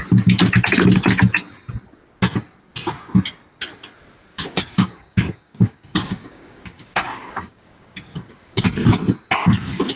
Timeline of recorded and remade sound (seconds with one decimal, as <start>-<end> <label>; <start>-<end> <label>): 0.0-4.3 recorded; 4.3-8.6 remade; 8.6-10.0 recorded